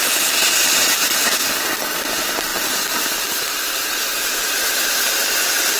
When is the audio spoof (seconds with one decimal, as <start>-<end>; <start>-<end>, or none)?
0.0-1.0; 2.1-5.8